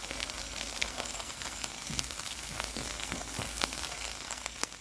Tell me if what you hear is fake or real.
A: fake